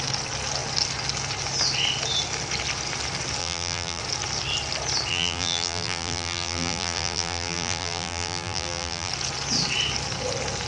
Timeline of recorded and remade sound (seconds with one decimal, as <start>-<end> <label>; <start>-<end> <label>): 0.0-3.4 recorded; 3.4-4.0 remade; 4.0-5.1 recorded; 5.1-9.1 remade; 9.1-10.7 recorded